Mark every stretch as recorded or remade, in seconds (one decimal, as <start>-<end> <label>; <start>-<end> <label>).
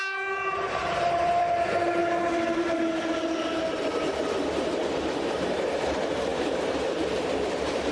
0.0-2.0 remade; 2.0-3.5 recorded; 3.5-7.9 remade